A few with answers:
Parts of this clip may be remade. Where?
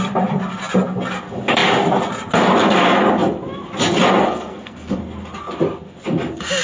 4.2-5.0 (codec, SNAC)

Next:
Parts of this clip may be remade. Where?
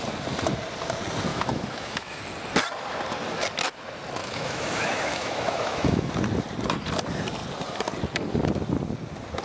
1.3-2.2 (autoencoder, DAC-VAE); 4.2-6.1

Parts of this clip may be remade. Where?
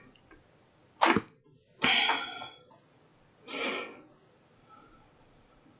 none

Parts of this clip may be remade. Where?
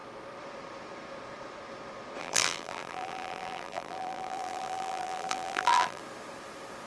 2.2-6.0 (vocoder, BigVGAN v2)